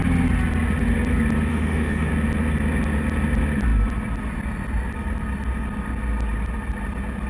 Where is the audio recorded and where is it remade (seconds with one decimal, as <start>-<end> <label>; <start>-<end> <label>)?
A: 0.0-1.5 recorded; 1.5-2.1 remade; 2.1-7.3 recorded